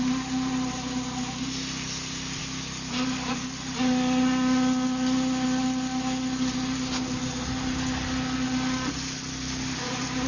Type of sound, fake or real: real